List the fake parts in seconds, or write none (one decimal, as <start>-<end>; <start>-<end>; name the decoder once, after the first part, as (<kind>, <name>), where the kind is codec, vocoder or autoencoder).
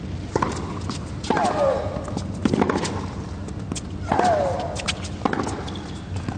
none